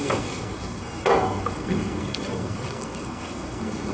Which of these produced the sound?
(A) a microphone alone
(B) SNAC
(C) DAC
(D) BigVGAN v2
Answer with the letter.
B